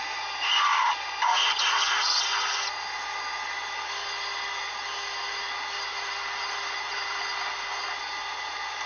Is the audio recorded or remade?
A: recorded